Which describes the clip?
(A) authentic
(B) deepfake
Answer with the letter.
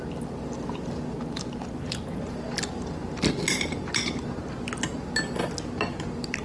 A